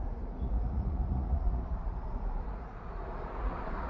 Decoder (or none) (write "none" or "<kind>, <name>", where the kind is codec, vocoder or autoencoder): vocoder, Vocos